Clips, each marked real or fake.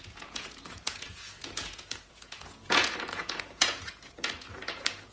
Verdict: fake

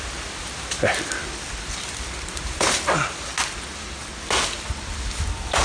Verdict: real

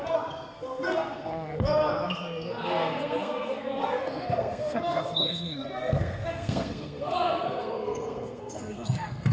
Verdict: fake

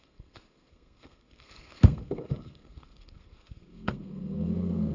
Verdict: fake